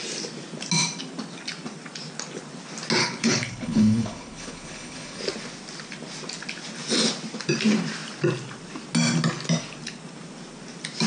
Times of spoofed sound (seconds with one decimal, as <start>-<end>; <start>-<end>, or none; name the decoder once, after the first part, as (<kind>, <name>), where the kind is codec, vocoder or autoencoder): 3.0-5.2 (codec, HILCodec)